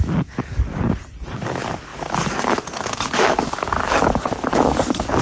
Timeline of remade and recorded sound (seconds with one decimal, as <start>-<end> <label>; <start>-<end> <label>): 0.0-5.2 remade